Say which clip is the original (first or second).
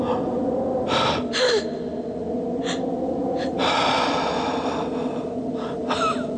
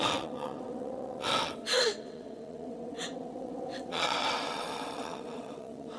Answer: first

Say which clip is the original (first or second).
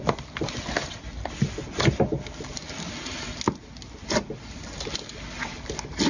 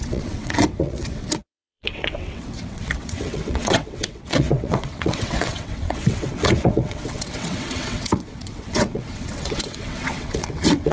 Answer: first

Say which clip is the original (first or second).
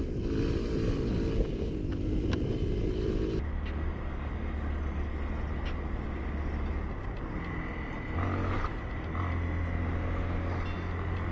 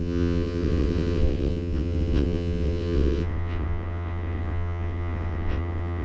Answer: first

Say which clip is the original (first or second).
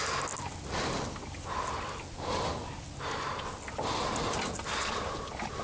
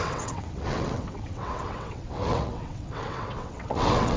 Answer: first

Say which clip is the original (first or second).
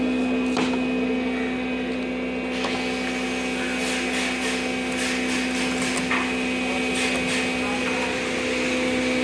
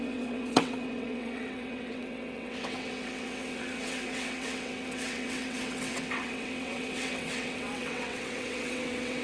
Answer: first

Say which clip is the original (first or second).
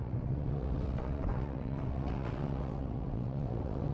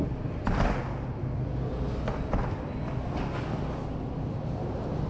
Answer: second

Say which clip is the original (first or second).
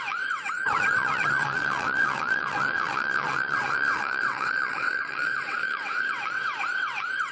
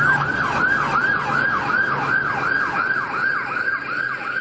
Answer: second